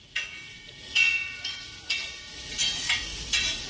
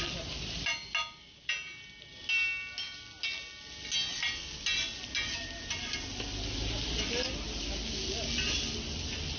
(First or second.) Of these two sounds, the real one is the second